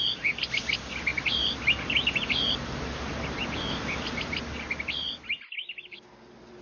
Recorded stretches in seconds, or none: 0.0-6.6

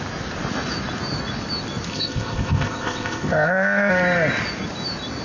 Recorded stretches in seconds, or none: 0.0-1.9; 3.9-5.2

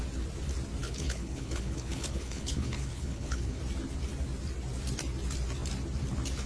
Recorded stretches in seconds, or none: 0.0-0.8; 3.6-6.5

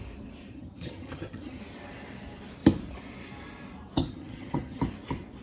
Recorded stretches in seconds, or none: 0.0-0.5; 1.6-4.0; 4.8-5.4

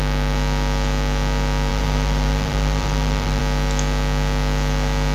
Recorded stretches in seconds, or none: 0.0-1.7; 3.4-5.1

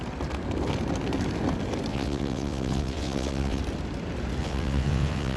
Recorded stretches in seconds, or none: 0.0-1.9; 3.6-4.4

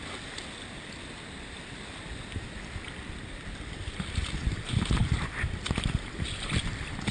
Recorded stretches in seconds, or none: 0.0-7.1

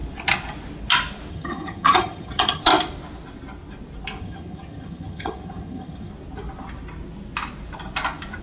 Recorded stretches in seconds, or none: 0.0-1.3; 2.7-4.2; 6.1-8.4